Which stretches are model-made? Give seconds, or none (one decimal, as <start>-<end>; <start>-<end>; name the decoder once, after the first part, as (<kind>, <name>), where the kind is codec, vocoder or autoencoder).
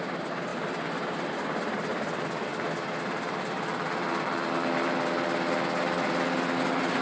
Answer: none